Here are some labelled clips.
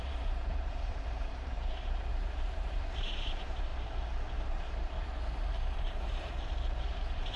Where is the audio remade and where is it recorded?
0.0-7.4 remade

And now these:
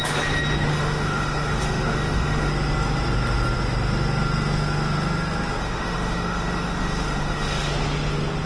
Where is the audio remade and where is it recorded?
0.0-0.7 recorded; 0.7-2.5 remade; 2.5-5.6 recorded; 5.6-7.7 remade; 7.7-8.5 recorded

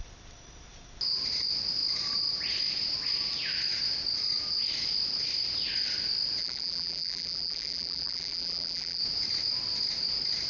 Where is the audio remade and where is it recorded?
0.0-6.4 recorded; 6.4-9.0 remade; 9.0-10.5 recorded

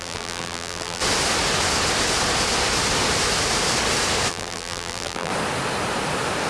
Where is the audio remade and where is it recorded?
0.0-1.0 remade; 1.0-4.3 recorded; 4.3-5.3 remade; 5.3-6.5 recorded

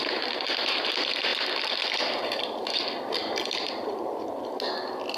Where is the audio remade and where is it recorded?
0.0-1.3 recorded; 1.3-2.7 remade; 2.7-5.2 recorded